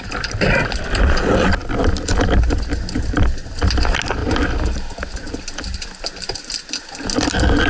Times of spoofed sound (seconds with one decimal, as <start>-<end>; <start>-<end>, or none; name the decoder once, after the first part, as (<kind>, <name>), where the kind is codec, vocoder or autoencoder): none